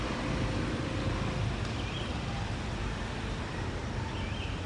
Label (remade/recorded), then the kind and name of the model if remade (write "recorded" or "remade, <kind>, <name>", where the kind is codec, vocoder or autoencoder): recorded